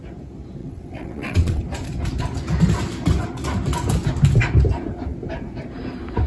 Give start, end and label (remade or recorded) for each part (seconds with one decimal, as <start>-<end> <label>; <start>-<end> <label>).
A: 0.0-0.6 recorded; 0.6-1.6 remade; 1.6-6.3 recorded